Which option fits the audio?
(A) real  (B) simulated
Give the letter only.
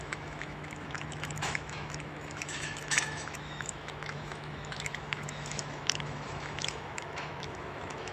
B